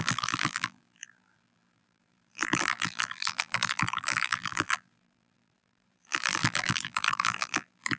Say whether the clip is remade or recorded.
remade